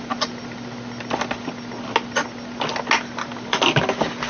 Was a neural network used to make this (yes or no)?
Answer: no